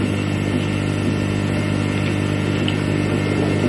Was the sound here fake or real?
real